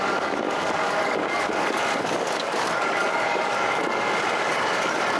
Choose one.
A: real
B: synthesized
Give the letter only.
B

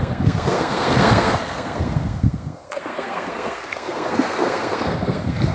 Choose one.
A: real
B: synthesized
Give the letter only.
B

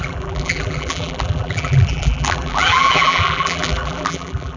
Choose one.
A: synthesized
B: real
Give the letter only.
A